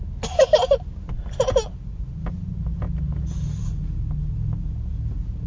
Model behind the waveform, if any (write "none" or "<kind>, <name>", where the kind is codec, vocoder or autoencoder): none